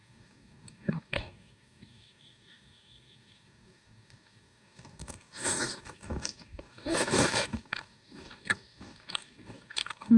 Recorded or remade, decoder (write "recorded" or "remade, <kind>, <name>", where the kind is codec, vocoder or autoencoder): remade, codec, DAC